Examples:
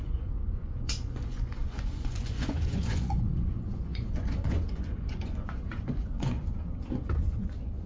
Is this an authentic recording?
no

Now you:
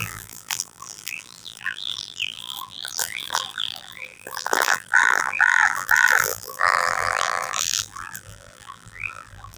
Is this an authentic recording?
no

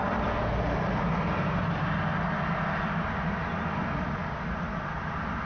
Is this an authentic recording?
yes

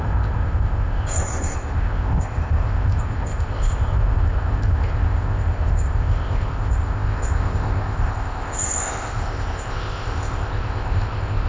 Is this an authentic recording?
no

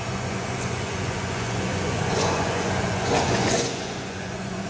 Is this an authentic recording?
no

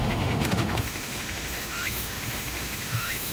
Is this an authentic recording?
no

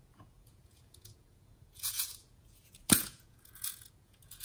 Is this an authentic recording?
no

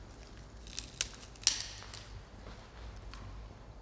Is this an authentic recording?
yes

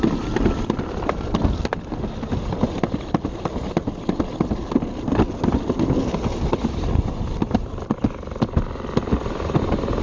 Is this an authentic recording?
yes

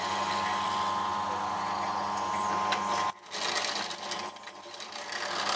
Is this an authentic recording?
yes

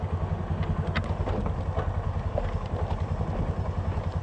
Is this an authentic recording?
yes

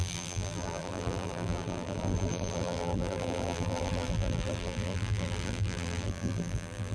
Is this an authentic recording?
no